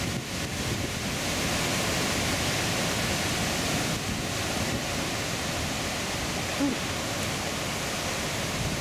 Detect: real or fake real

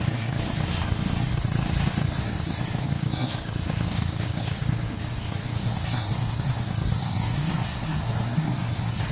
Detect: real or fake fake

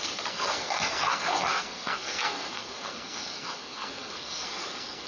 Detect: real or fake fake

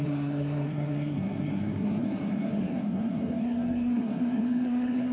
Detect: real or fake fake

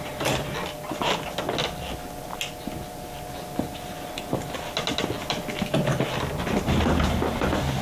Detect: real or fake real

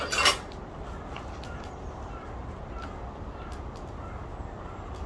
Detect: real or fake real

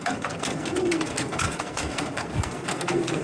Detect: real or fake fake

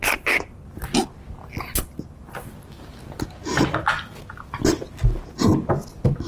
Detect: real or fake real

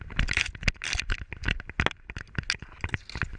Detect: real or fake real